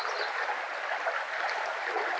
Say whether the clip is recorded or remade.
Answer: recorded